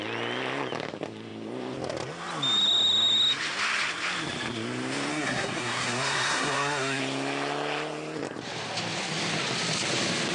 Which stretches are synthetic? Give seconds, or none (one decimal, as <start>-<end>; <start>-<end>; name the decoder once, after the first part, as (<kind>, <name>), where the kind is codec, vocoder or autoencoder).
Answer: 5.1-7.0 (codec, SNAC)